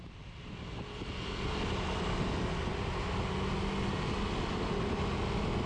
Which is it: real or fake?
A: real